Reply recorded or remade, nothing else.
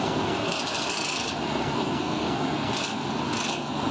remade